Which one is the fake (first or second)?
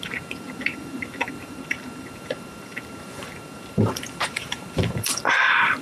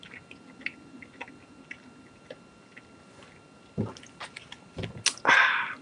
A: first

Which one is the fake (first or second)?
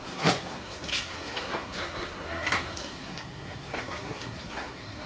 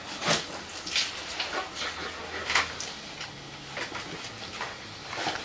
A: first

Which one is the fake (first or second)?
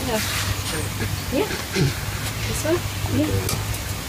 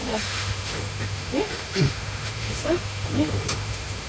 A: second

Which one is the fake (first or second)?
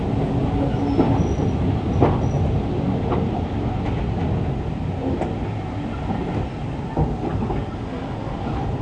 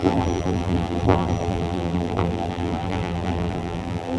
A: second